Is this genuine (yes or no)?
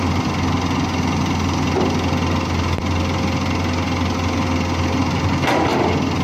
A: yes